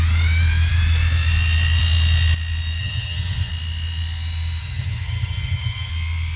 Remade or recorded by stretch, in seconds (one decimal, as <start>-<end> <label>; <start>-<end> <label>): 0.0-2.8 recorded; 2.8-3.5 remade; 3.5-4.6 recorded; 4.6-5.9 remade; 5.9-6.4 recorded